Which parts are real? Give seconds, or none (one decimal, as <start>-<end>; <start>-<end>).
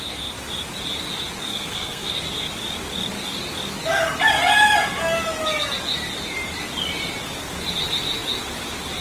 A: 0.0-1.5; 2.2-9.0